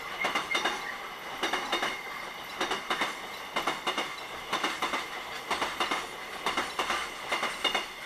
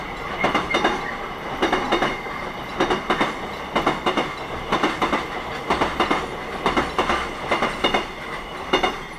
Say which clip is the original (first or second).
second